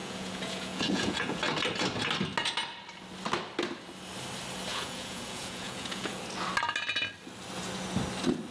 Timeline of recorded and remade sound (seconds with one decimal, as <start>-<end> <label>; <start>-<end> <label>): 0.0-1.4 remade; 1.4-4.7 recorded; 4.7-6.2 remade; 6.2-8.5 recorded